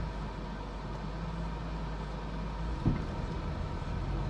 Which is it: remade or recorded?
recorded